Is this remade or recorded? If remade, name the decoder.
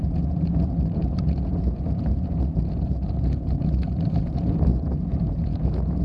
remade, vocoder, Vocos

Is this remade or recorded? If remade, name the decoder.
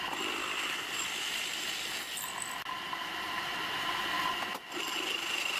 recorded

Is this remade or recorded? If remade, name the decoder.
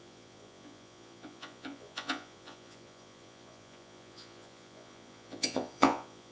remade, vocoder, Vocos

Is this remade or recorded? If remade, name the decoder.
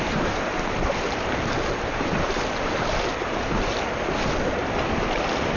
recorded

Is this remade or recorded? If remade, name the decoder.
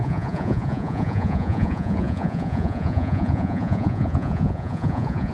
remade, vocoder, Vocos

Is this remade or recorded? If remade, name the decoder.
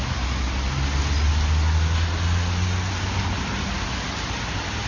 recorded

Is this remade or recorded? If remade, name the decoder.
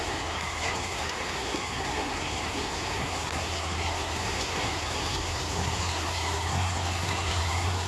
remade, codec, SNAC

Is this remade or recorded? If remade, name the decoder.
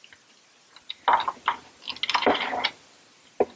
recorded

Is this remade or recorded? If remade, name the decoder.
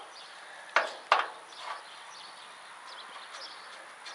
recorded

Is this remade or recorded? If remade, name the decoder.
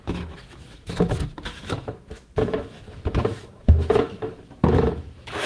remade, autoencoder, DAC-VAE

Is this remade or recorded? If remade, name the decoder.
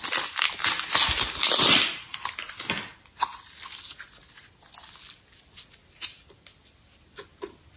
recorded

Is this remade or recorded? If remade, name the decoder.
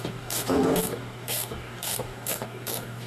remade, codec, DAC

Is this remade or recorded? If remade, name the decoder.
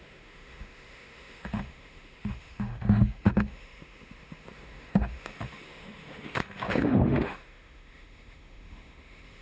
remade, autoencoder, DAC-VAE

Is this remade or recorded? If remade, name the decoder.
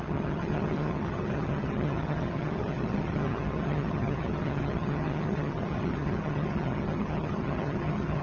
remade, vocoder, HiFi-GAN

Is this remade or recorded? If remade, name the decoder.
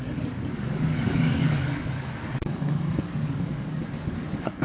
remade, codec, DAC